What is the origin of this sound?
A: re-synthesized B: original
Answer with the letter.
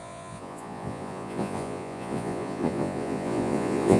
A